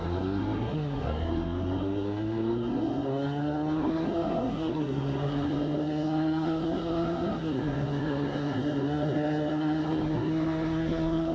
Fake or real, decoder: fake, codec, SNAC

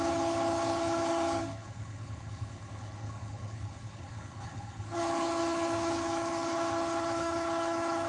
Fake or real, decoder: fake, codec, HILCodec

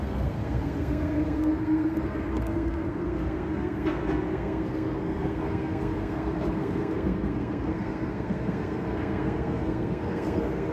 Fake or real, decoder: fake, codec, SNAC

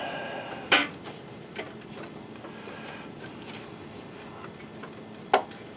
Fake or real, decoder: real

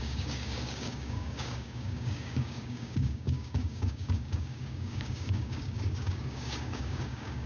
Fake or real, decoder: fake, codec, DAC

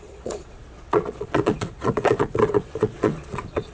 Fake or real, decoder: fake, vocoder, Vocos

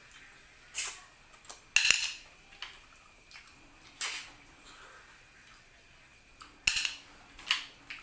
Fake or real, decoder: real